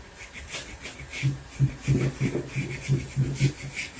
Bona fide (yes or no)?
yes